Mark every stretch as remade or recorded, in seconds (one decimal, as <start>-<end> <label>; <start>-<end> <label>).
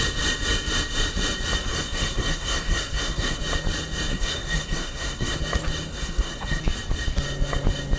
0.0-1.7 recorded; 1.7-3.4 remade; 3.4-4.1 recorded; 4.1-5.4 remade; 5.4-5.9 recorded; 5.9-6.6 remade; 6.6-8.0 recorded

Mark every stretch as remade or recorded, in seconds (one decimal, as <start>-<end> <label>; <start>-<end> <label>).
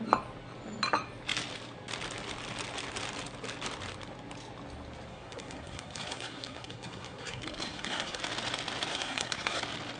0.0-5.1 recorded; 5.1-8.2 remade; 8.2-8.9 recorded; 8.9-9.6 remade; 9.6-10.0 recorded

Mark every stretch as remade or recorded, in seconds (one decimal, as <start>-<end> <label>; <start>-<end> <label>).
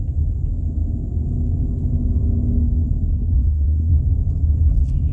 0.0-3.1 recorded; 3.1-3.9 remade; 3.9-5.1 recorded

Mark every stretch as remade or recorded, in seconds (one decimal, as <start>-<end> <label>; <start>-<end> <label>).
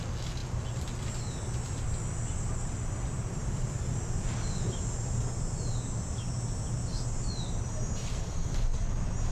0.0-8.1 recorded; 8.1-8.9 remade; 8.9-9.3 recorded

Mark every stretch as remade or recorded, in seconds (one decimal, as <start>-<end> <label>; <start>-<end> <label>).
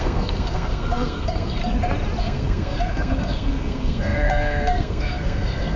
0.0-1.6 remade; 1.6-2.2 recorded; 2.2-5.8 remade